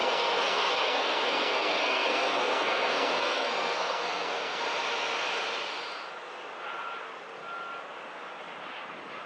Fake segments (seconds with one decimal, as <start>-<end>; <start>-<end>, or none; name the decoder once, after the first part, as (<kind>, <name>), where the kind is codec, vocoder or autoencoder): 0.0-4.6 (codec, SNAC)